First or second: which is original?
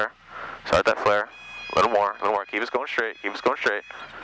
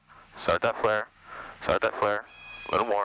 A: first